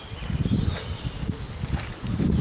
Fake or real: fake